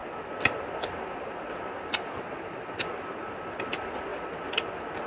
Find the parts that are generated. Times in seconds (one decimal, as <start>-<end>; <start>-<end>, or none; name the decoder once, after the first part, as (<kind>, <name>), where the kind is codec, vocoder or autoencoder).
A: none